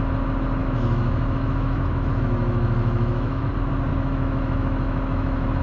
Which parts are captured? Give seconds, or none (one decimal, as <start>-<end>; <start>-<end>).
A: 0.0-0.6; 3.5-3.9